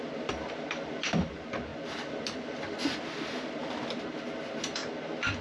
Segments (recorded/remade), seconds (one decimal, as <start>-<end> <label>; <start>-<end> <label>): 0.0-5.4 recorded

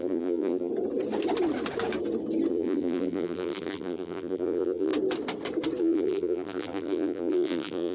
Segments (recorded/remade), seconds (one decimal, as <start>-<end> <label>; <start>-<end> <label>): 0.0-0.7 remade; 0.7-2.5 recorded; 2.5-4.9 remade; 4.9-5.8 recorded; 5.8-7.9 remade

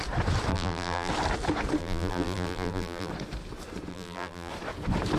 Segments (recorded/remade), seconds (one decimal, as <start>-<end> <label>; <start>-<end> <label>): 0.0-0.5 recorded; 0.5-1.1 remade; 1.1-1.8 recorded; 1.8-3.1 remade; 3.1-3.9 recorded; 3.9-4.5 remade; 4.5-5.2 recorded

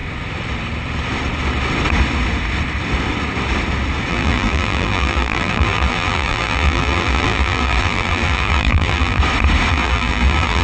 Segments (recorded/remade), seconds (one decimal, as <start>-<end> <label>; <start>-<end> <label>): 0.0-4.1 recorded; 4.1-9.2 remade; 9.2-9.7 recorded; 9.7-10.6 remade

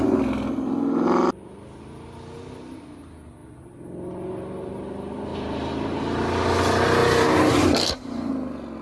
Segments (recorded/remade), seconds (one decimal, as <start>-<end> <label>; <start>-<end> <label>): 0.0-5.3 recorded; 5.3-6.0 remade; 6.0-7.0 recorded; 7.0-8.3 remade; 8.3-8.8 recorded

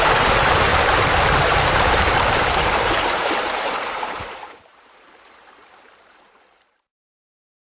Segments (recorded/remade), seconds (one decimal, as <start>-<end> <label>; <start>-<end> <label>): 0.0-7.7 remade

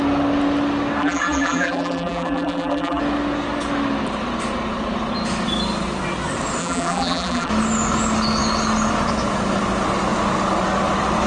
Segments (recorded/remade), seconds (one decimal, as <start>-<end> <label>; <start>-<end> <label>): 0.0-1.0 recorded; 1.0-3.0 remade; 3.0-6.6 recorded; 6.6-7.5 remade; 7.5-11.3 recorded

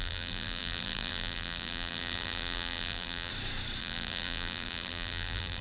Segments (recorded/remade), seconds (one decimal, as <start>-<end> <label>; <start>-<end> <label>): 0.0-3.3 remade; 3.3-3.8 recorded; 3.8-5.6 remade